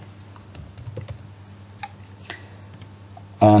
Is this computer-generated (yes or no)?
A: no